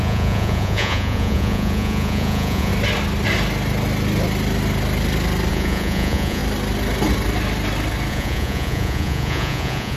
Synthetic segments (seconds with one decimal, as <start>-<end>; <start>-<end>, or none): 0.0-2.7; 5.5-6.4; 8.1-10.0